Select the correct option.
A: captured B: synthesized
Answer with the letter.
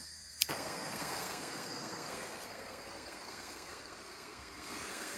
B